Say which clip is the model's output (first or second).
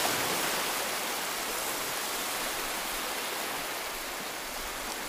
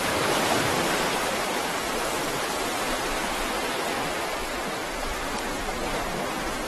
second